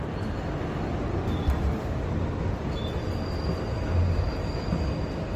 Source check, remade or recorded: recorded